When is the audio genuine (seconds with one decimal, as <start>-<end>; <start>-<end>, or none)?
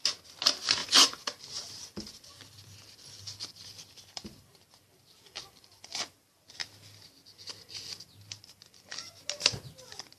0.0-0.8; 6.0-6.6; 7.5-10.2